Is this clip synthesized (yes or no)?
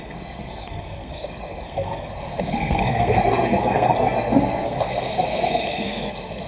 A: yes